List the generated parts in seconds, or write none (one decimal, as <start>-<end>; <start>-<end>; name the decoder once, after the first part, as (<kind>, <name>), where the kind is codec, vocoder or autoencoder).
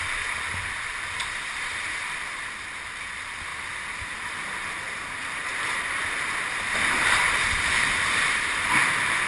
none